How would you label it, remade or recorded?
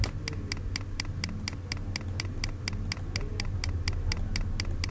recorded